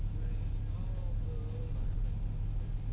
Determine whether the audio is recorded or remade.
recorded